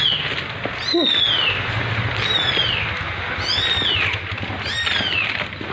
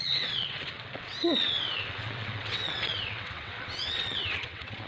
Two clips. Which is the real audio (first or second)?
first